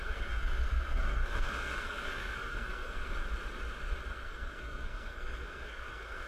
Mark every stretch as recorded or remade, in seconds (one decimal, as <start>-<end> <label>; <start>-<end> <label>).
0.0-3.1 remade; 3.1-4.1 recorded; 4.1-6.3 remade

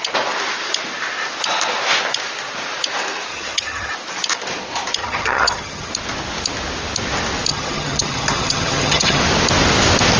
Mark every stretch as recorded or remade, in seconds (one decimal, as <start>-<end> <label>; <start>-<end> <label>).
0.0-3.3 recorded; 3.3-3.9 remade; 3.9-5.0 recorded; 5.0-5.9 remade; 5.9-7.5 recorded; 7.5-9.2 remade; 9.2-10.2 recorded

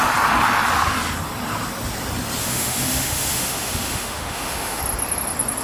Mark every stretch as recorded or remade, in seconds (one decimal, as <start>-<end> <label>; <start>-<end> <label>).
0.0-2.4 recorded; 2.4-4.8 remade; 4.8-5.6 recorded

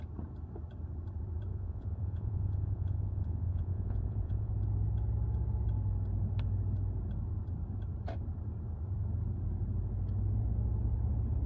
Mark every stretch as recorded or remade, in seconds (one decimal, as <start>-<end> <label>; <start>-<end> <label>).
0.0-1.5 recorded; 1.5-4.5 remade; 4.5-11.5 recorded

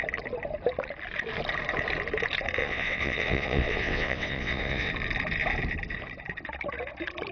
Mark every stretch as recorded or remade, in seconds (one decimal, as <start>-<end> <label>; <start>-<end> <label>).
0.0-2.6 recorded; 2.6-4.9 remade; 4.9-7.3 recorded

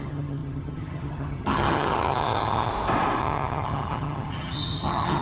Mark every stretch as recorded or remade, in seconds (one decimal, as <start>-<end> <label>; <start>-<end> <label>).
0.0-2.7 remade; 2.7-3.2 recorded; 3.2-5.2 remade

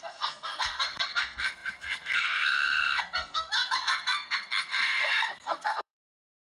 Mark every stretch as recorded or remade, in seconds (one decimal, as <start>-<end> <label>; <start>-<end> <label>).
0.0-6.5 remade